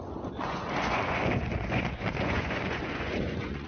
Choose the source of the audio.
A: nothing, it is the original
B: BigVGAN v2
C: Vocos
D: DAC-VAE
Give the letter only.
C